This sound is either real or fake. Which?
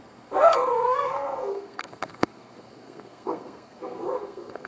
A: fake